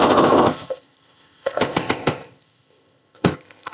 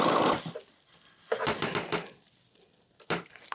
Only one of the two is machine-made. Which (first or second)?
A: first